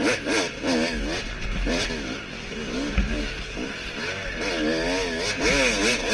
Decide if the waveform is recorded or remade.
recorded